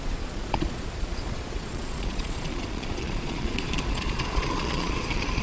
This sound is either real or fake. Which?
fake